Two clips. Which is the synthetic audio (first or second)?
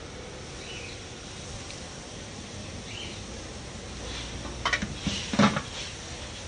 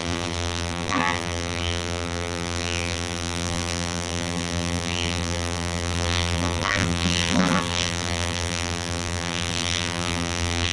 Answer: second